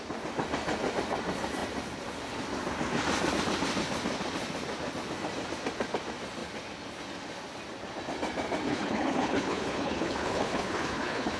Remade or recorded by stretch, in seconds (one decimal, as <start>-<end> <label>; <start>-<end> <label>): 0.0-8.7 recorded; 8.7-11.4 remade